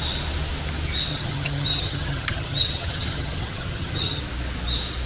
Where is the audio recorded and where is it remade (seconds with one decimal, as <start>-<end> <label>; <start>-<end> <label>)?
0.0-1.1 recorded; 1.1-4.2 remade; 4.2-5.1 recorded